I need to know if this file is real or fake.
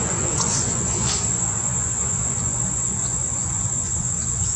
fake